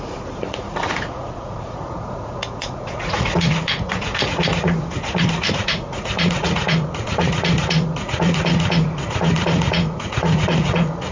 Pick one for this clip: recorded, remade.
remade